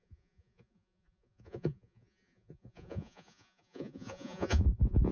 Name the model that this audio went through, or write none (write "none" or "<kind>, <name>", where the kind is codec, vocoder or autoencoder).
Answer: vocoder, Vocos